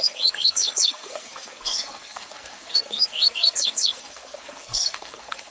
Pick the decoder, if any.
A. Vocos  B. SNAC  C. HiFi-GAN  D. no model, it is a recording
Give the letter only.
B